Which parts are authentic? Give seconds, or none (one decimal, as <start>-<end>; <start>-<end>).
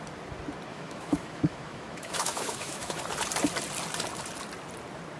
0.0-0.7; 3.0-5.2